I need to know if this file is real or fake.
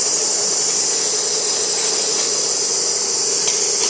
real